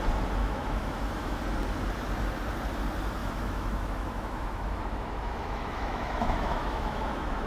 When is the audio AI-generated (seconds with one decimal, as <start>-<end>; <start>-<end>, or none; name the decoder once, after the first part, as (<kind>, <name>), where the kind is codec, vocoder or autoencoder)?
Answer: 0.4-1.4 (autoencoder, DAC-VAE); 3.2-7.5